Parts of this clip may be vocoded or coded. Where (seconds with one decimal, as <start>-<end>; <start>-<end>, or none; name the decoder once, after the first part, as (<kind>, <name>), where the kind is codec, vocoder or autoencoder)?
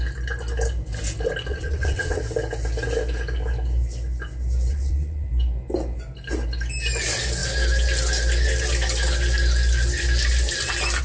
1.5-2.2 (vocoder, WaveNeXt); 4.7-5.3